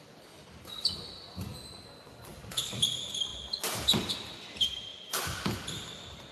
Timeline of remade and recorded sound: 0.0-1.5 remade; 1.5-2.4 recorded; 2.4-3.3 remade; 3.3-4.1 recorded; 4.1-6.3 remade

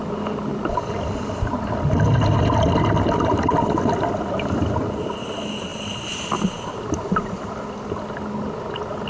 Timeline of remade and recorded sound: 0.0-5.7 recorded; 5.7-6.7 remade; 6.7-9.1 recorded